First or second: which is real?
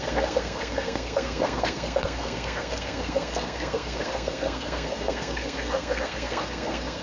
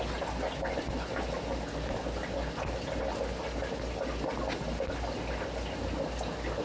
second